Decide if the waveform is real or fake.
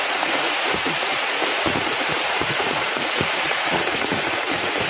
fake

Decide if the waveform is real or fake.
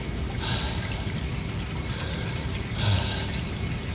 real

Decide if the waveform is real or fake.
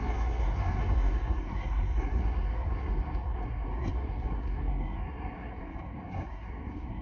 fake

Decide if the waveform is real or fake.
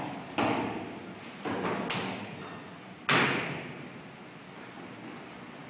real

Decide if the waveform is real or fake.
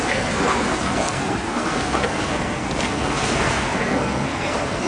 fake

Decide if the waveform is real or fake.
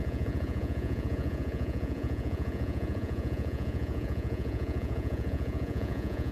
fake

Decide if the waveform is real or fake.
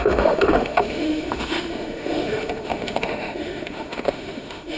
fake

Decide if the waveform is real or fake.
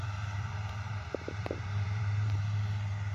fake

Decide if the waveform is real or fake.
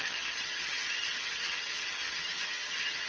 fake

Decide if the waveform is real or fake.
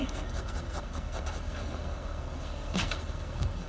fake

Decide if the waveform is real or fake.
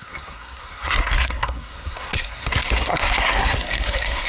fake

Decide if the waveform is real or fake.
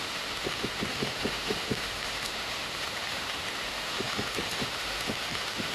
fake